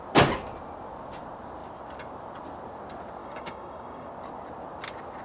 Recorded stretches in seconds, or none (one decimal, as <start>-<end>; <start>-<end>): 0.0-3.2; 4.1-5.2